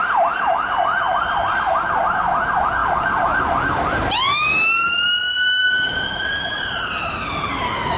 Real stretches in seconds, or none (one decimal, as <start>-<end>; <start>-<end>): 0.0-2.8; 4.1-5.6; 7.5-8.0